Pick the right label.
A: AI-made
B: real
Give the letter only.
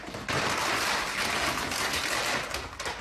B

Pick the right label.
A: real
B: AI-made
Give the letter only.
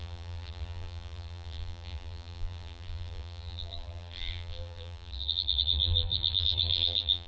B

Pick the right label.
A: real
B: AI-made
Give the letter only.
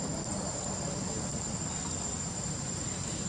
A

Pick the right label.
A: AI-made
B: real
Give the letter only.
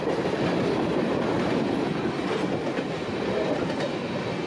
A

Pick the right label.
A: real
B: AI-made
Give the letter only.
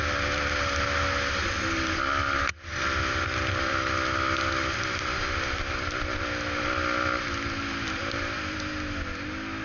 A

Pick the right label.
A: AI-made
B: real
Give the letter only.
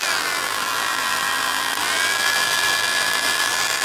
A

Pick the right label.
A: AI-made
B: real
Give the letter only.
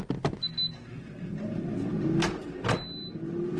B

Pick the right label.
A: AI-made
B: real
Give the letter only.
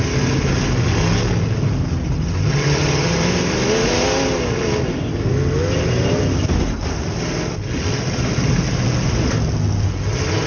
B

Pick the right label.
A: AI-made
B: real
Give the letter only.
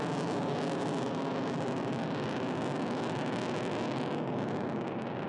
B